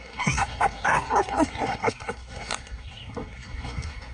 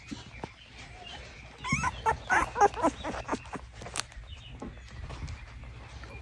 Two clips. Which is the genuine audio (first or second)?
second